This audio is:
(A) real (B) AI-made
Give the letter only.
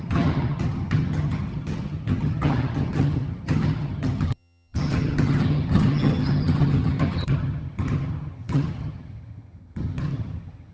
B